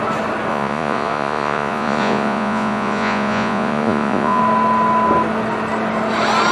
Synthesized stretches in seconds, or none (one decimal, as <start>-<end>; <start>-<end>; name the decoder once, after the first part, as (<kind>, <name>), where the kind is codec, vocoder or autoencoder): 0.5-4.4 (vocoder, Vocos)